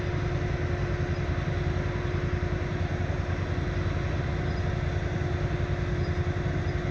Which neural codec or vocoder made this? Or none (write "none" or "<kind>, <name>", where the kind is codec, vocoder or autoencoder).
none